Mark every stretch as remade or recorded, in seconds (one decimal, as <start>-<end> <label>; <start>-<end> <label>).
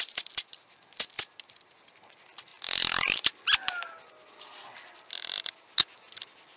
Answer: 0.0-2.5 recorded; 2.5-4.1 remade; 4.1-6.6 recorded